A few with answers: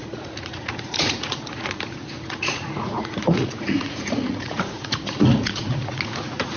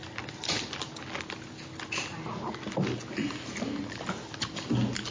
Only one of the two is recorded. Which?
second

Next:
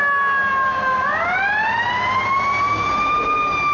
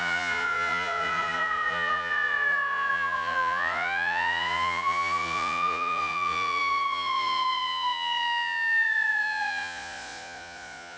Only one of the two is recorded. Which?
first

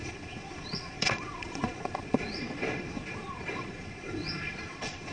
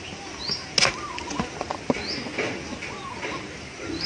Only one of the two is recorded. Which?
second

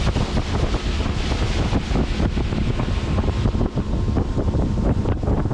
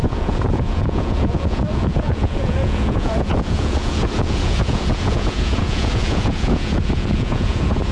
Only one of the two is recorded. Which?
first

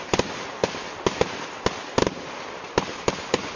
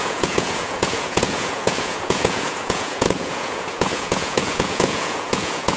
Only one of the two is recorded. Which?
first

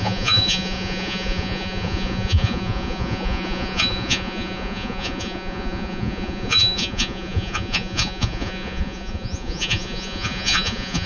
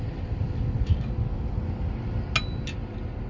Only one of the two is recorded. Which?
second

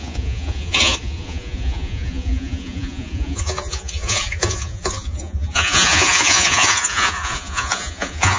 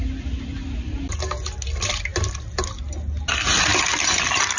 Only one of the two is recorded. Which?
second